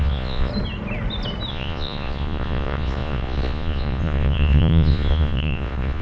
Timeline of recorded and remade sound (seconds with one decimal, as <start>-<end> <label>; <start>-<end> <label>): 0.0-0.5 remade; 0.5-1.5 recorded; 1.5-6.0 remade